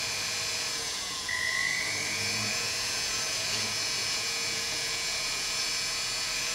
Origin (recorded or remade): remade